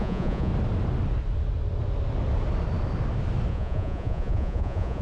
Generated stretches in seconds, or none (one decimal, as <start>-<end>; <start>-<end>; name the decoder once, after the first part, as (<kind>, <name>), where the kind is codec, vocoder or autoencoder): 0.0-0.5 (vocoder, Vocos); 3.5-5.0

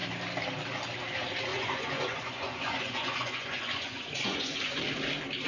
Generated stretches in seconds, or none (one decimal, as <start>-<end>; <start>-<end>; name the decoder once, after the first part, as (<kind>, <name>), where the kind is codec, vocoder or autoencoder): 1.5-4.8 (vocoder, Vocos)

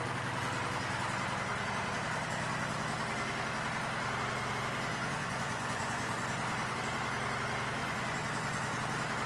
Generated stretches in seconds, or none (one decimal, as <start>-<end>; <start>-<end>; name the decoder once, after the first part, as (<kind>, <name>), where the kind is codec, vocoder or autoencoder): 4.9-6.8 (vocoder, Vocos); 7.8-8.8

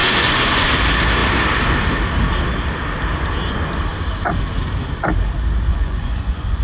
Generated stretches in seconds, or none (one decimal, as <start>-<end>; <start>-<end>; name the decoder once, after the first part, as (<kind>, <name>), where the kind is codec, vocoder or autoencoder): 0.0-0.7 (vocoder, Vocos); 5.7-6.6

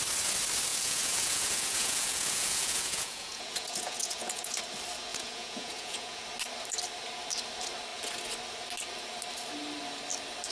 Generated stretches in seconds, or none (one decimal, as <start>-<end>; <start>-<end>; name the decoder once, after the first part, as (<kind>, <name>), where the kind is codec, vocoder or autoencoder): 0.7-4.6 (vocoder, Vocos); 5.1-6.2

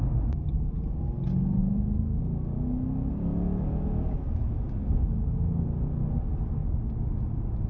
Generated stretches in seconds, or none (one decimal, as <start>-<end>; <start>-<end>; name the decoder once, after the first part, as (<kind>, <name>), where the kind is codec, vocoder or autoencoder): 1.6-2.2 (vocoder, Vocos)

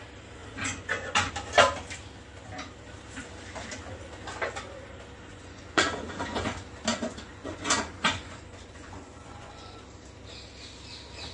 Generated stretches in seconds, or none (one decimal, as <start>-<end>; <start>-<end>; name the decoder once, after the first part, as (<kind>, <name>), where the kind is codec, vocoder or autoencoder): 0.4-1.3 (vocoder, Vocos); 5.3-6.4; 6.9-9.8

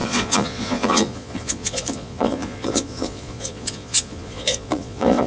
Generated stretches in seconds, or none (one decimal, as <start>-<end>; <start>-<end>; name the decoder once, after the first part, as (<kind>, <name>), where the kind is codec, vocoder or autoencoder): 0.0-5.3 (vocoder, Vocos)